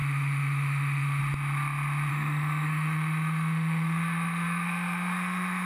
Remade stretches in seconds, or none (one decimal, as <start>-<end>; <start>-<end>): 0.0-1.2; 2.1-5.7